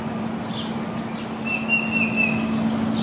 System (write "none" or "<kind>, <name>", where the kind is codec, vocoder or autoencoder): none